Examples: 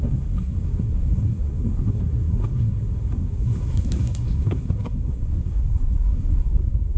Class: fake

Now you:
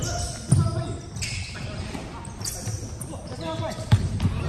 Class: real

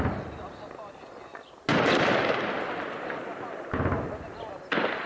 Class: real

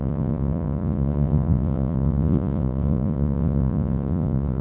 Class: fake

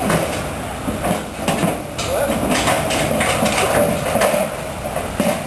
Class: real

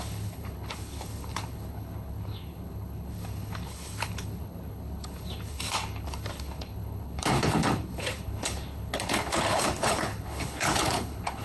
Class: fake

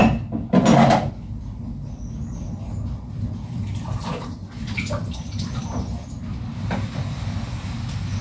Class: real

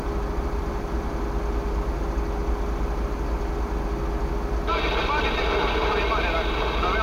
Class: real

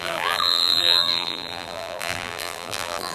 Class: fake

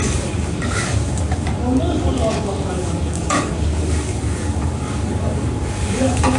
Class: fake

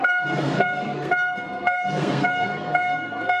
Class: fake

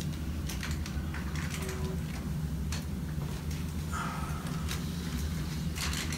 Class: real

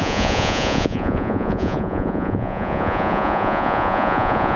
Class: fake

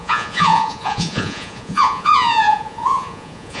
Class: fake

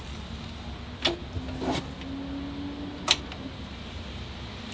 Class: real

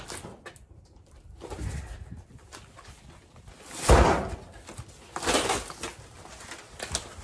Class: real